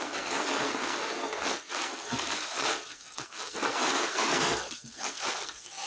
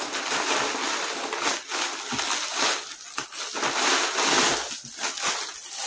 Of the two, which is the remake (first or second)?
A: first